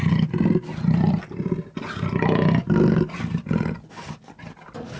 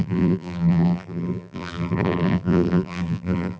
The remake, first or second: second